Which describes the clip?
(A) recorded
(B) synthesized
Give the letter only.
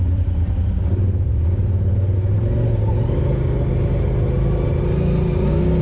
A